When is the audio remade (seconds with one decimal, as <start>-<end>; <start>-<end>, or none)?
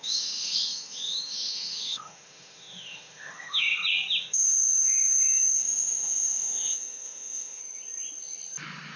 0.0-3.7; 4.2-7.6